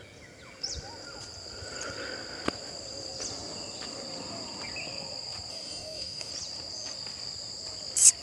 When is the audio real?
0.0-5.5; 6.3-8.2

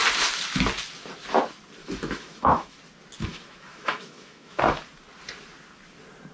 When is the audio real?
0.0-1.8; 2.8-3.3; 4.6-6.3

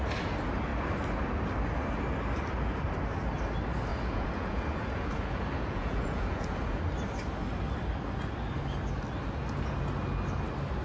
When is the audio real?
0.0-3.9; 6.8-10.8

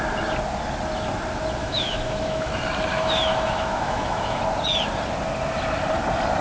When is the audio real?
0.0-1.6; 2.5-2.9; 4.4-6.4

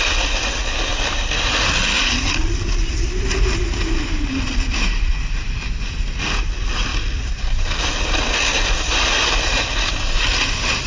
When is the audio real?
0.0-10.9

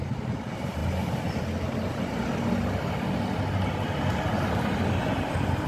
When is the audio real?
0.0-5.7

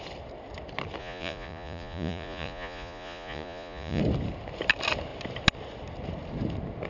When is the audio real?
0.0-1.0; 4.0-6.9